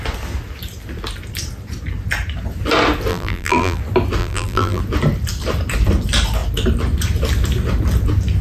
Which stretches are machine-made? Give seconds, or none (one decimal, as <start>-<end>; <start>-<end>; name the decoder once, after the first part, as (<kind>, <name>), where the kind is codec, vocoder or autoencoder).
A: 3.1-3.8 (vocoder, BigVGAN v2); 4.2-4.8